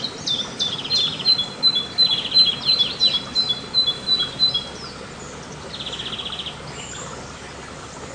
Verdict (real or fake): real